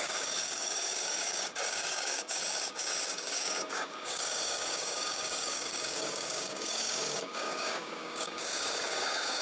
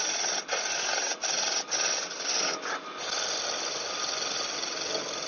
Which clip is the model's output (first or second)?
first